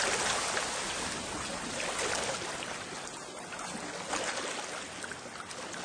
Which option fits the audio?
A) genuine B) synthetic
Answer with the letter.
A